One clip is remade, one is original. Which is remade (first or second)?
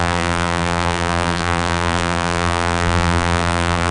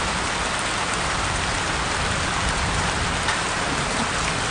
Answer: first